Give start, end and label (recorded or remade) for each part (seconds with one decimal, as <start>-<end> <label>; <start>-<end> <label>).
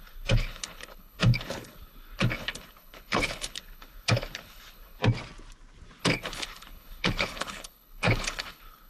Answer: 0.0-5.0 remade; 5.0-6.0 recorded; 6.0-8.9 remade